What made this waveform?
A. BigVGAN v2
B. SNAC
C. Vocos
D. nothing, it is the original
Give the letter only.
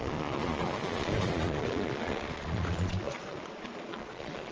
C